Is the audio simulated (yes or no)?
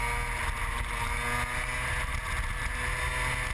no